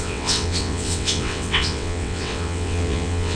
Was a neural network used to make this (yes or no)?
yes